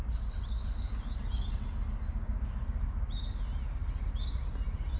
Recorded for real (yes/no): yes